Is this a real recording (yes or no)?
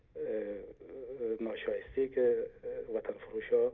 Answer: yes